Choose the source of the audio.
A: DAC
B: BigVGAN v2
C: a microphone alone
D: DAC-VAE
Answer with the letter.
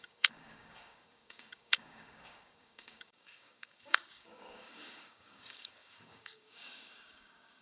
A